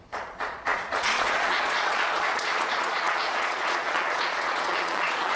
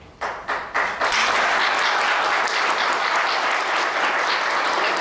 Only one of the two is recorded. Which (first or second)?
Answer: second